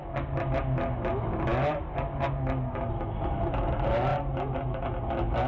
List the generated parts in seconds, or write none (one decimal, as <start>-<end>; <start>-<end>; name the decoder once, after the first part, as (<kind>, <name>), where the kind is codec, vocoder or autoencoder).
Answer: none